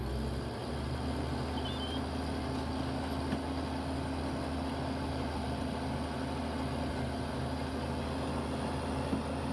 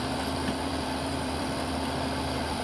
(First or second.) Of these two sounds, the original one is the first